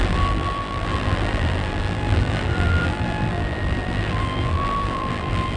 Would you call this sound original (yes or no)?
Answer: no